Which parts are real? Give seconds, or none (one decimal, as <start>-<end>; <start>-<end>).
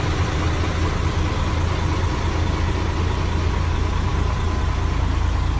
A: 0.0-5.6